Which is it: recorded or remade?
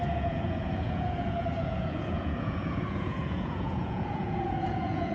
remade